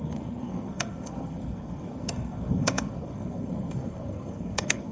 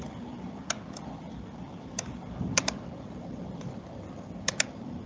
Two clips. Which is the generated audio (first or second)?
first